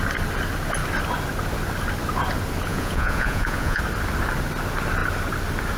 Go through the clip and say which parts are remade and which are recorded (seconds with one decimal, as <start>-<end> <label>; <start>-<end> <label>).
0.0-2.7 recorded; 2.7-3.8 remade; 3.8-5.8 recorded